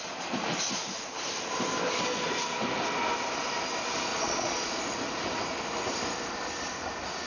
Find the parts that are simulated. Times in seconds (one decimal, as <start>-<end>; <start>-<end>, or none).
4.1-4.8